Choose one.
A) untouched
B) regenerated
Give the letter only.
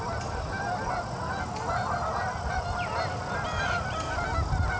A